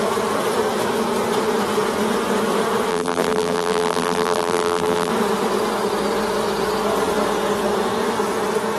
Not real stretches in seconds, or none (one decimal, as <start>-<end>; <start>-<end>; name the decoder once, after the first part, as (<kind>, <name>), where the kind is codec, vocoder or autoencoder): 2.9-5.1 (vocoder, BigVGAN v2)